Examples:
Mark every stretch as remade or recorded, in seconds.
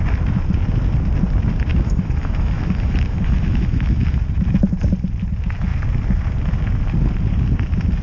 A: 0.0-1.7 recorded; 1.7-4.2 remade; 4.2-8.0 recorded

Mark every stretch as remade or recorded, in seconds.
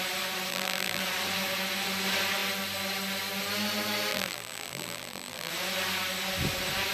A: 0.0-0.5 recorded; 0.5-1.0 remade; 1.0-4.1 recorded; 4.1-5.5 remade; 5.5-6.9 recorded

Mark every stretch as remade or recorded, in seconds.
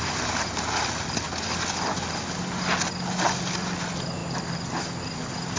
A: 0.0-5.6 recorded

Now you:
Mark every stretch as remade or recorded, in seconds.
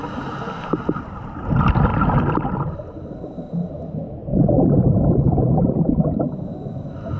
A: 0.0-1.9 recorded; 1.9-3.7 remade; 3.7-4.3 recorded; 4.3-5.7 remade; 5.7-7.2 recorded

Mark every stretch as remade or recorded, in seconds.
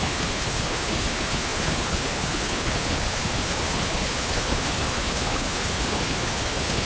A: 0.0-6.9 remade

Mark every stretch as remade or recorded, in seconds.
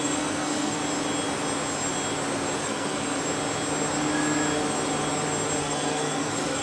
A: 0.0-0.8 remade; 0.8-2.6 recorded; 2.6-3.2 remade; 3.2-5.6 recorded; 5.6-6.6 remade